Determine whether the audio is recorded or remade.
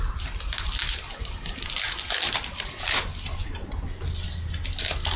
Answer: recorded